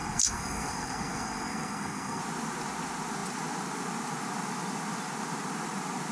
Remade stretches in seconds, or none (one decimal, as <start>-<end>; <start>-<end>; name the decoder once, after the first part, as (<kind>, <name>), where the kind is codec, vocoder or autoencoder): 0.0-2.2 (codec, SNAC)